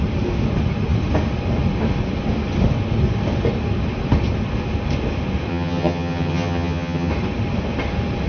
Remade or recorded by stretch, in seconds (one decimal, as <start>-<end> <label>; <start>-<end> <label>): 0.0-5.5 recorded; 5.5-7.1 remade; 7.1-8.3 recorded